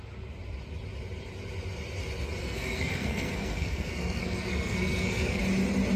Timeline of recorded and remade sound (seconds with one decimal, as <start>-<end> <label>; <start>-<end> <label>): 0.0-2.4 recorded; 2.4-5.4 remade; 5.4-6.0 recorded